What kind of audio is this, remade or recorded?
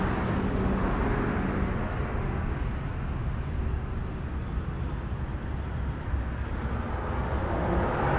recorded